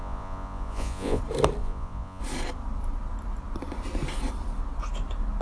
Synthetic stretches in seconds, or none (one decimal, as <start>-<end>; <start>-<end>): 0.0-1.2; 1.6-2.2